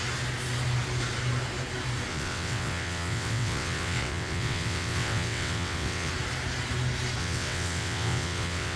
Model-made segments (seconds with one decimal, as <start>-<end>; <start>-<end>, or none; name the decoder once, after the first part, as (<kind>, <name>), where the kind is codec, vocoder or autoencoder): 2.1-6.1 (vocoder, WaveNeXt); 7.2-8.8